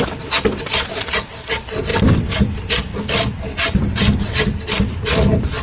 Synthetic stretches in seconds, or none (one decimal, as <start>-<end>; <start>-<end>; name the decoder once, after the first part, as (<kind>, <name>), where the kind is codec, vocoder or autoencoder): none